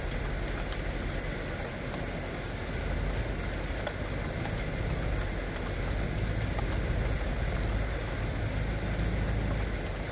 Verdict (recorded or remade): recorded